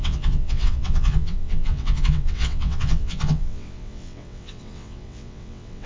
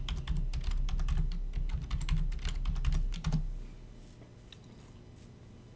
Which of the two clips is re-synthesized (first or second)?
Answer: first